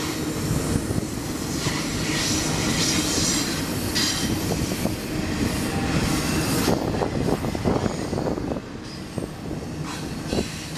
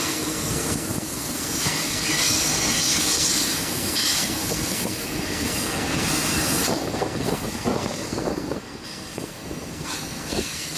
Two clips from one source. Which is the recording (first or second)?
first